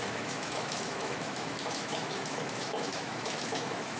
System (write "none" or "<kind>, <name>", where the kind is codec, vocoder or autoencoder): autoencoder, DAC-VAE